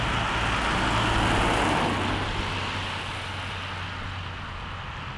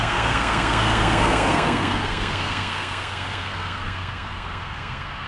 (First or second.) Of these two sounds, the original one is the first